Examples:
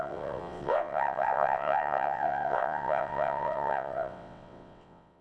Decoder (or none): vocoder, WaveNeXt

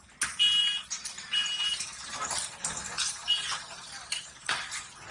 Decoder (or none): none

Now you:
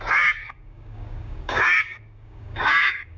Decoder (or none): codec, DAC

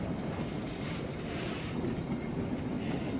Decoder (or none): none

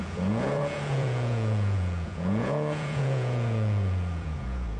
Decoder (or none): vocoder, Vocos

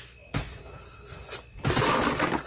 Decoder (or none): none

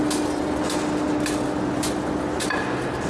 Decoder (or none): none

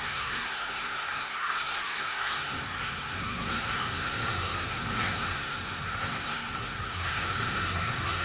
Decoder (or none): codec, SNAC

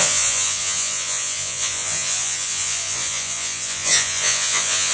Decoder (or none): vocoder, Vocos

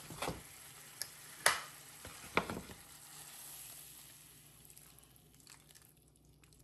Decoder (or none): none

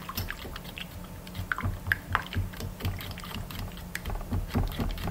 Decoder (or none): none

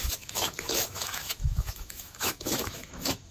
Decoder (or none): autoencoder, DAC-VAE